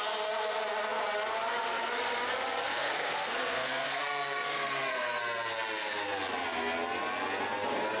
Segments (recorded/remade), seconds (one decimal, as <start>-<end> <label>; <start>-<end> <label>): 0.0-2.8 recorded; 2.8-5.2 remade; 5.2-8.0 recorded